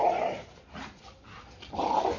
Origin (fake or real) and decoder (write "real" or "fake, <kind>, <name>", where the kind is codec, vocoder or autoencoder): real